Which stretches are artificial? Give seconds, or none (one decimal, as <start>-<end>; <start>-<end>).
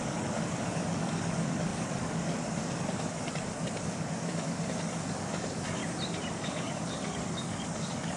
0.0-5.8; 6.3-8.2